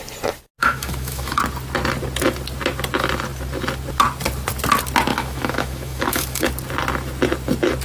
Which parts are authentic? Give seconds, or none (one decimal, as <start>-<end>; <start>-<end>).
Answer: 0.0-0.6; 1.4-5.1; 6.5-7.8